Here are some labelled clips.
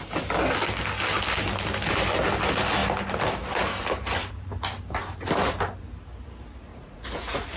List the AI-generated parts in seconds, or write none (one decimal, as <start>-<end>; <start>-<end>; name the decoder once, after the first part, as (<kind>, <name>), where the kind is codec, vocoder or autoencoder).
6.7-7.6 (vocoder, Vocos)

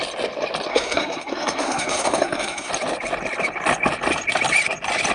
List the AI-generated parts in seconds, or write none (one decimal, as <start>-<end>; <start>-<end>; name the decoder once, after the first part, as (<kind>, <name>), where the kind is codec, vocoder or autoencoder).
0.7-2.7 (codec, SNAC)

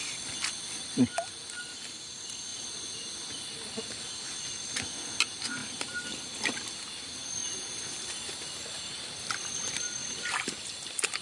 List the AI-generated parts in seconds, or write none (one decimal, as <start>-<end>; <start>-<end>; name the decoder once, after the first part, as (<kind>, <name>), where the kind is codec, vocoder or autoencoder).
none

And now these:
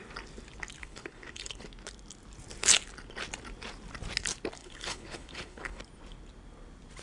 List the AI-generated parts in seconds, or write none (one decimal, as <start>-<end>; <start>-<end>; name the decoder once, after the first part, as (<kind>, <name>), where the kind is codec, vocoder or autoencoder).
0.8-1.6 (codec, HILCodec); 4.6-5.8

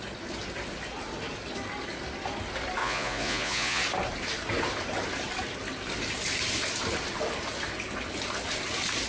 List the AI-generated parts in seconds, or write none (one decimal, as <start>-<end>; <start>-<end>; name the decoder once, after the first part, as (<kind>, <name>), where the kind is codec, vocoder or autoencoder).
2.8-3.8 (vocoder, Vocos)

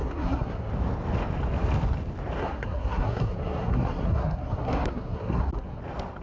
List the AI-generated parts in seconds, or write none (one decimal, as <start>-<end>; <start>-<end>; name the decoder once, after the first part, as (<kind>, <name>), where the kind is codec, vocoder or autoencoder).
0.0-0.7 (codec, SNAC); 2.4-5.8

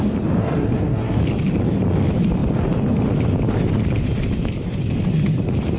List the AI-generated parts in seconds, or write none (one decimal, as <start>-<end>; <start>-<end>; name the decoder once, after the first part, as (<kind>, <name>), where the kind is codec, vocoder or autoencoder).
0.4-1.2 (codec, SNAC)

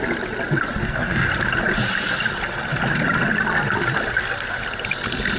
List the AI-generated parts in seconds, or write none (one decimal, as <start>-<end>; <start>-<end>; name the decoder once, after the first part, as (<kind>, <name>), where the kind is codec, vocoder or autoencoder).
0.8-1.3 (codec, SNAC)